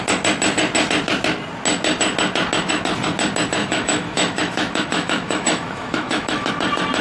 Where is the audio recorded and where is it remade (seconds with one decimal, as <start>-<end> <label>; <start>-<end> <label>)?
0.0-3.6 recorded; 3.6-6.5 remade; 6.5-7.0 recorded